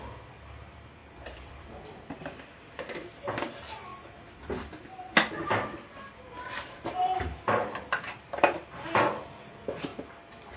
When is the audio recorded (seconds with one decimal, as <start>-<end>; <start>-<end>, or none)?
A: 0.0-10.6